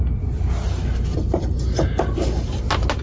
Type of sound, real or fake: real